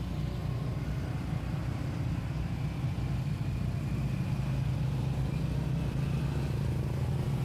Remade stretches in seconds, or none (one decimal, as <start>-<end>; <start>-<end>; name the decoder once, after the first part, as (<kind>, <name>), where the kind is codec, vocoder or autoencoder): none